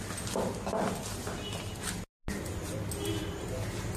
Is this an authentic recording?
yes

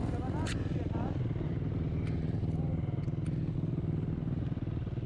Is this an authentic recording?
yes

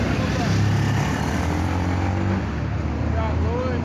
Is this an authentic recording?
yes